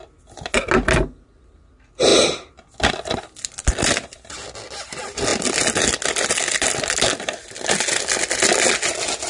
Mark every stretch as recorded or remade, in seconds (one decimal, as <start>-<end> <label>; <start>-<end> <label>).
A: 0.0-9.3 recorded